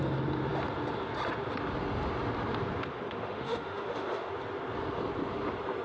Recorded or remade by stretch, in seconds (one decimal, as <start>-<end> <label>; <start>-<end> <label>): 0.0-2.9 recorded; 2.9-4.3 remade; 4.3-5.8 recorded